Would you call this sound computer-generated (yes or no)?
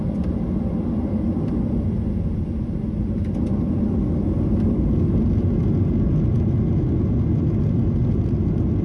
no